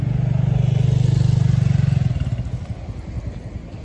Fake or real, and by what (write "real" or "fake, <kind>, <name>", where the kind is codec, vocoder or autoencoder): real